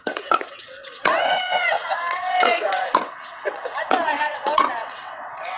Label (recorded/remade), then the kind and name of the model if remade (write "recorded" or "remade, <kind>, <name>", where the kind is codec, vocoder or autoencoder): remade, vocoder, WaveNeXt